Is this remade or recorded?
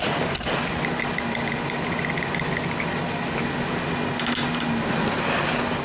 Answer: recorded